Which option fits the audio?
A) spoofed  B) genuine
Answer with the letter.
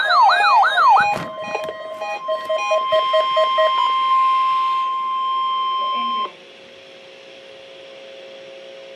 B